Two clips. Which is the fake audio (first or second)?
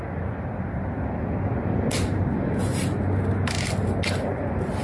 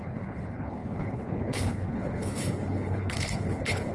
second